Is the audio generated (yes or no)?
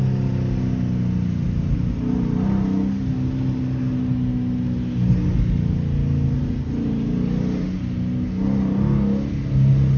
no